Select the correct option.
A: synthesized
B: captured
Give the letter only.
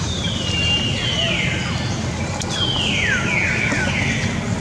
B